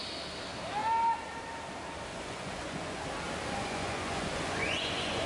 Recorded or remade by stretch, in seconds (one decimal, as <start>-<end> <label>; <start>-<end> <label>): 0.0-2.1 recorded; 2.1-3.0 remade; 3.0-3.6 recorded; 3.6-5.3 remade